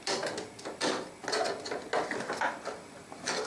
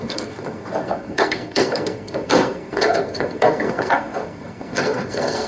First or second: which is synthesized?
second